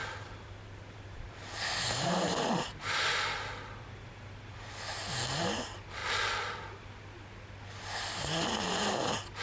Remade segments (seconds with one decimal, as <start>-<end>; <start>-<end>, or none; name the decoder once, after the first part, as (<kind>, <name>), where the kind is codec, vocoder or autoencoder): 0.0-3.2 (vocoder, BigVGAN v2)